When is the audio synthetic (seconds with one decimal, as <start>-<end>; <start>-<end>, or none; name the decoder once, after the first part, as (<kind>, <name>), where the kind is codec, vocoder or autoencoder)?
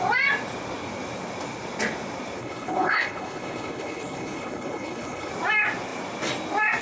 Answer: 2.4-5.3 (codec, HILCodec)